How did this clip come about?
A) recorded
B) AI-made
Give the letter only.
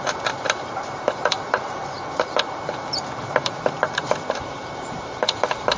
B